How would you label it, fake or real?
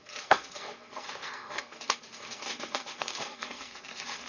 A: fake